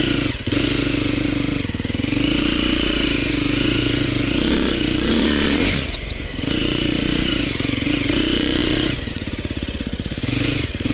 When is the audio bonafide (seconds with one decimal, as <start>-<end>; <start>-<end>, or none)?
none